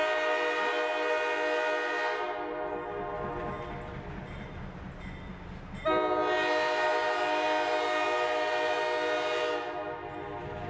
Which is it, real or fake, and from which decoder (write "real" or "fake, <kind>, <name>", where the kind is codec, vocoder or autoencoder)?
real